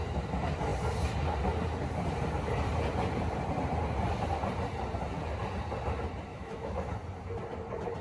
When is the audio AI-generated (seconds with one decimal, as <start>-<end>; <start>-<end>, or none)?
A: 6.3-6.9